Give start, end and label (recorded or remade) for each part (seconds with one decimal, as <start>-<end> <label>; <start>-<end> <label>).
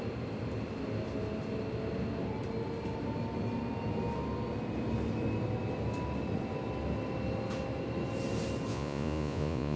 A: 0.0-8.7 recorded; 8.7-9.8 remade